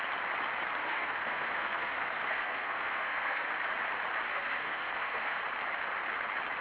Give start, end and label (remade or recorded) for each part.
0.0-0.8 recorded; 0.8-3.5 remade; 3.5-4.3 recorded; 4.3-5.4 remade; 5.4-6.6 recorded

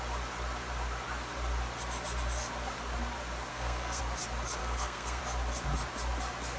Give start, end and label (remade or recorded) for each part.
0.0-3.5 recorded; 3.5-4.0 remade; 4.0-4.6 recorded; 4.6-5.2 remade; 5.2-6.6 recorded